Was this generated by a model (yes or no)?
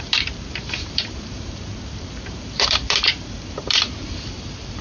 yes